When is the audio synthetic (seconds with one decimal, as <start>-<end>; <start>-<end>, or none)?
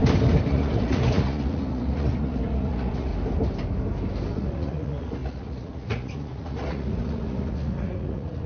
0.5-3.1; 4.3-8.5